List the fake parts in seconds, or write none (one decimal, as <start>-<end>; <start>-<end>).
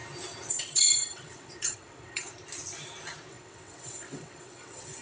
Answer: 0.5-2.3; 3.3-5.0